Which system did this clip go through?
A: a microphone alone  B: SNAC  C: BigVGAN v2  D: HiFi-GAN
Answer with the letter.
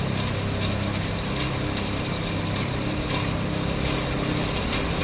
A